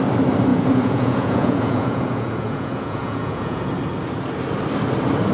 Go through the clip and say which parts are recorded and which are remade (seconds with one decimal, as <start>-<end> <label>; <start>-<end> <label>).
0.0-0.5 recorded; 0.5-3.7 remade; 3.7-5.3 recorded